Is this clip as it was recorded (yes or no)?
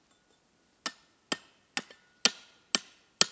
yes